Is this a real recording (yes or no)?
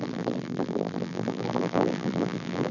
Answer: no